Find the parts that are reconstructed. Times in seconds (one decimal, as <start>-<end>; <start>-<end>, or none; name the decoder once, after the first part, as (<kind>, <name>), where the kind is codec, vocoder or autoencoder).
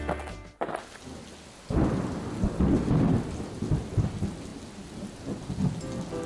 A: none